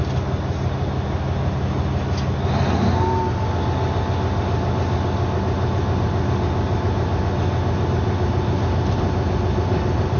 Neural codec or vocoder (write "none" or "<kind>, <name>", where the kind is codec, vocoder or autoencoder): none